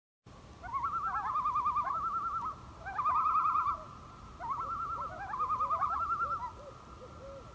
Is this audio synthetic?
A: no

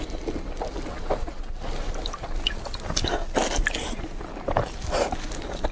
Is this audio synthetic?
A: no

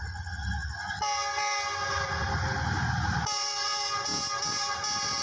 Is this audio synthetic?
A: no